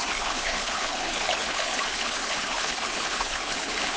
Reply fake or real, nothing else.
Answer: fake